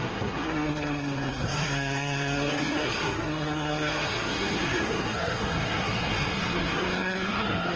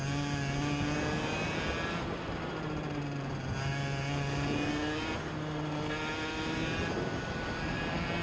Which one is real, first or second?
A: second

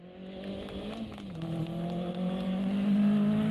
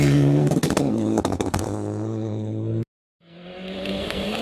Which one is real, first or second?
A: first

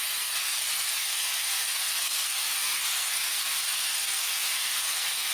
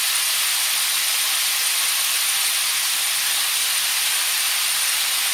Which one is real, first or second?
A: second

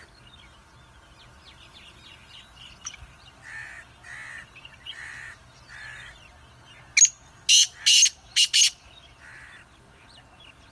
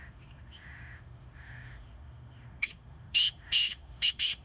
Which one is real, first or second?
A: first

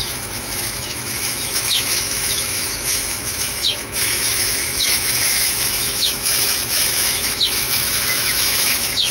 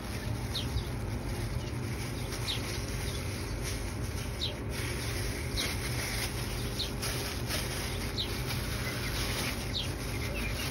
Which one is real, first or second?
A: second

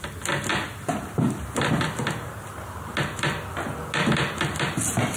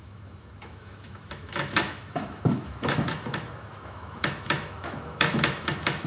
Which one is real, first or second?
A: first